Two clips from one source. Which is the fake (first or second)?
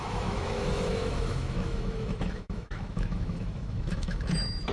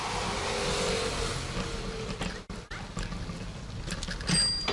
first